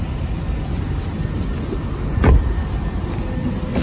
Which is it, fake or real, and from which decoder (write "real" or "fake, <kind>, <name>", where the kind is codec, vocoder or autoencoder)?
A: real